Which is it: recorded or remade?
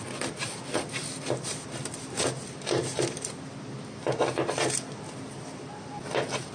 recorded